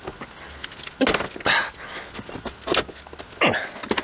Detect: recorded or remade recorded